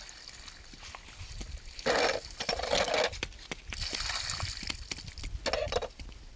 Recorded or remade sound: recorded